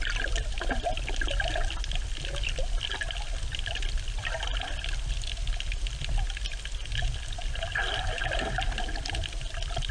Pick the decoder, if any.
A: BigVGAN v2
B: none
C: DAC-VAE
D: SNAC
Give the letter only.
B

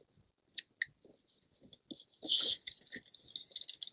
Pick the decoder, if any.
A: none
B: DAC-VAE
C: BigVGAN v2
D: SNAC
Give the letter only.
A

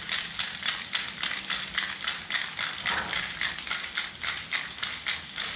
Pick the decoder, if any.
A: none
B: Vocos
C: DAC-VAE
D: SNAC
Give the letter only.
A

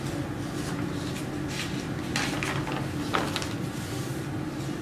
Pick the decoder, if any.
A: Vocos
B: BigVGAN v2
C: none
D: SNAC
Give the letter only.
C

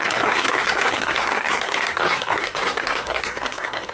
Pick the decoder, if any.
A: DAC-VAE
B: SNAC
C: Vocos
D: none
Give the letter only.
B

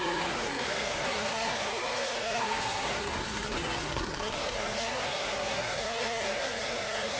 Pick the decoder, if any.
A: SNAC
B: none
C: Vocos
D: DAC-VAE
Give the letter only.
A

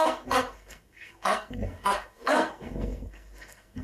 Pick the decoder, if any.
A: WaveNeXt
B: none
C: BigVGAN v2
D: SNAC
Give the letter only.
D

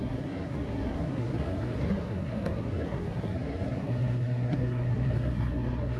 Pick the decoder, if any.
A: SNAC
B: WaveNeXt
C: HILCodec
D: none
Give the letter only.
A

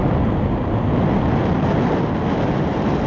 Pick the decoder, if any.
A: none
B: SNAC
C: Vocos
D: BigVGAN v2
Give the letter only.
A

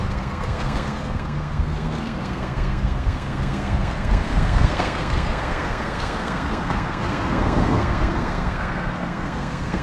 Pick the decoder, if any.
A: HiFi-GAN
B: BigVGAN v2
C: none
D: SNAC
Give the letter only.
D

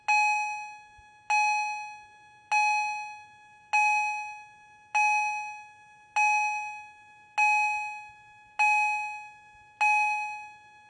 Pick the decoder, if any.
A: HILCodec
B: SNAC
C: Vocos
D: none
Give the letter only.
D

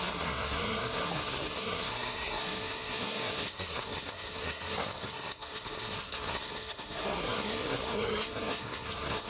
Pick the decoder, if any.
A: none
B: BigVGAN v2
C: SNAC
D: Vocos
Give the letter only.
C